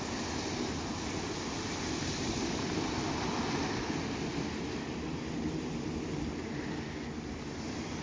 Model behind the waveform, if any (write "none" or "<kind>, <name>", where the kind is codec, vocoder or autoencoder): none